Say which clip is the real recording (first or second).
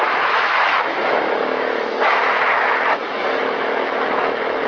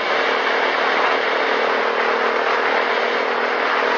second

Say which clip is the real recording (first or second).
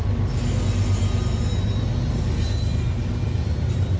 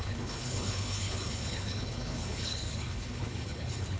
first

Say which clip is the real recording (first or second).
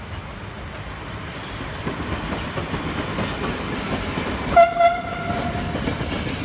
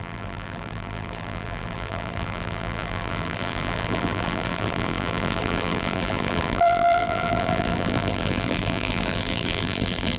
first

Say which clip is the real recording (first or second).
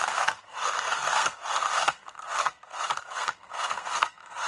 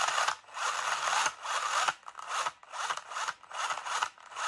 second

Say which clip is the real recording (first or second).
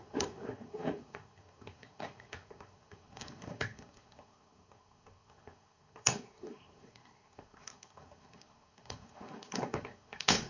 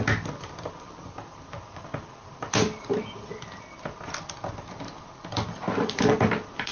second